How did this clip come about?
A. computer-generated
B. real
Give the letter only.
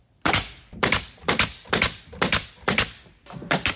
A